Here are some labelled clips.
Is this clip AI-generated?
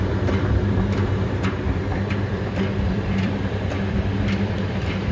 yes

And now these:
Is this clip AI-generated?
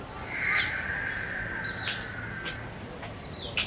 no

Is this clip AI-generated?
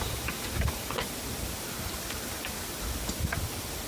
no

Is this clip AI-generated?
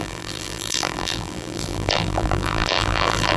yes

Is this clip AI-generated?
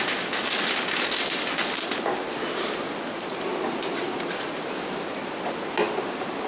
no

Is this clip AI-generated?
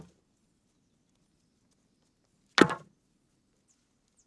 no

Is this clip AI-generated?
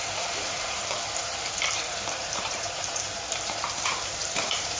yes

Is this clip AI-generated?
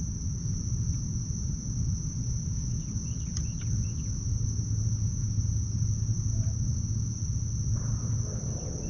no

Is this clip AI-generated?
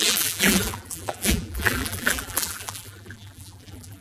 yes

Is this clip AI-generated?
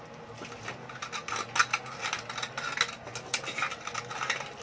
no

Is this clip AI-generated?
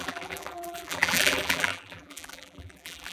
yes